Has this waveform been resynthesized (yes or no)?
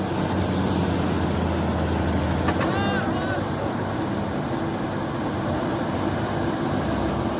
no